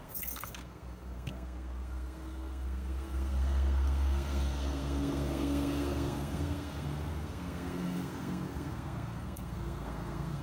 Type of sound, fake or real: fake